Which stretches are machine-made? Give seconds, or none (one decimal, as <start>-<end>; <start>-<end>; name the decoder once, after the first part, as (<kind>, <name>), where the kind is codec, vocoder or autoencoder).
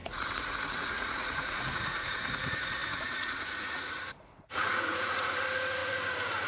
0.0-6.5 (vocoder, Vocos)